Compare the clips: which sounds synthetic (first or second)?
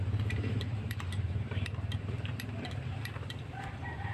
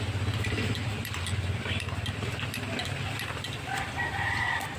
first